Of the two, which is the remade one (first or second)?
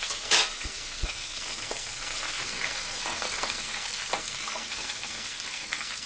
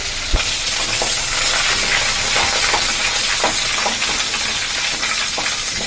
first